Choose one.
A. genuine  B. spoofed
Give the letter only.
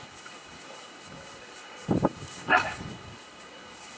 B